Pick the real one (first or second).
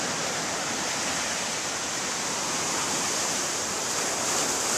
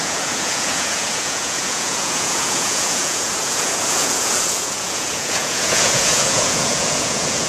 first